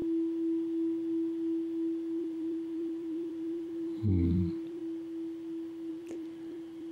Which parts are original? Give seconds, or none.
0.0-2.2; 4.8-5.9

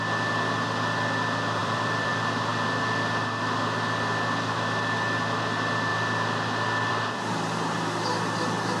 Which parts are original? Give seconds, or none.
0.0-1.6; 2.1-8.8

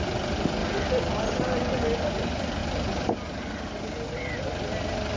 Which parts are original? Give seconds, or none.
0.0-0.6; 1.3-5.2